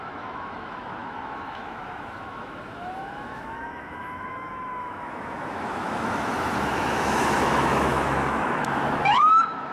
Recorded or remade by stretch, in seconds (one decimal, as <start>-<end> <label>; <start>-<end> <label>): 0.0-9.7 remade